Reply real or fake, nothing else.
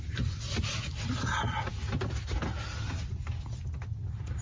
real